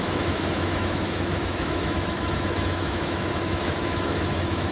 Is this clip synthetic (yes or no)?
yes